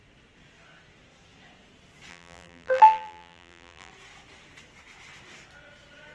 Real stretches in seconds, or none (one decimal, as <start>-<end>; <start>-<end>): 0.0-2.1; 3.9-6.1

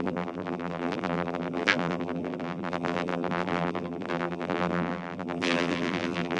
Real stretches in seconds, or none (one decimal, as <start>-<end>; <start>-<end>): none

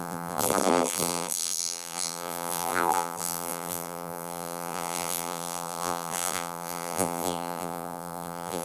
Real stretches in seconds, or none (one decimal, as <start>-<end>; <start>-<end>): none

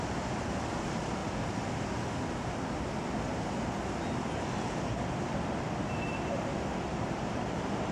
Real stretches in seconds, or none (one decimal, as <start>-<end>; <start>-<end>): 1.2-4.9

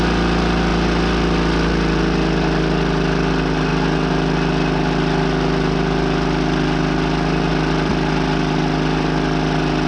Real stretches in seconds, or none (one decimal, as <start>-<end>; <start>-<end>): 0.0-9.9

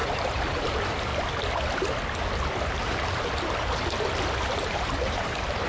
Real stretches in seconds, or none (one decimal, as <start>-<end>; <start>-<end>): 1.1-4.5

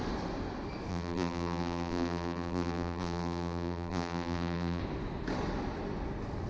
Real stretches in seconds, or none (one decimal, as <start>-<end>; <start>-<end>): 0.0-0.9; 4.8-6.5

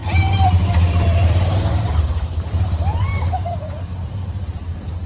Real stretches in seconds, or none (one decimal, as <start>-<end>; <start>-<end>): none